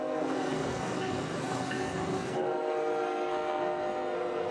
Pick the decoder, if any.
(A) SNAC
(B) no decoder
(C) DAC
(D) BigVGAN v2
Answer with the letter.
A